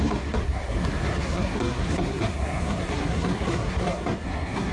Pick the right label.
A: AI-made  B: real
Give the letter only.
A